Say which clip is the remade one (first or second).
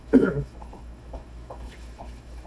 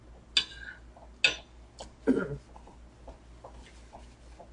first